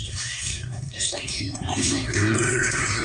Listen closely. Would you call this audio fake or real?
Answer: fake